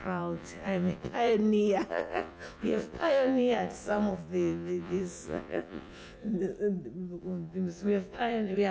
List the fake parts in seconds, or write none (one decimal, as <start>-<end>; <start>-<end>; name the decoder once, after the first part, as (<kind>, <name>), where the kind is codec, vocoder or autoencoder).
0.0-1.3 (vocoder, Vocos); 1.9-6.3; 7.2-8.7